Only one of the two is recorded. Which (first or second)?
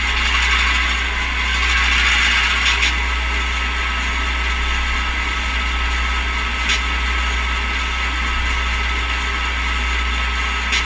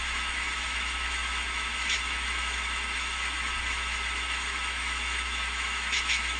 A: first